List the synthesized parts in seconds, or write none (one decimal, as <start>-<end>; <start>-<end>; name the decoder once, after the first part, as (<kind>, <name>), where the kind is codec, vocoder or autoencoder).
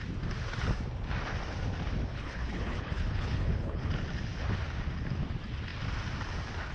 2.1-3.9 (codec, HILCodec)